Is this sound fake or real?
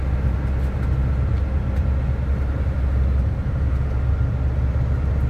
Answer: real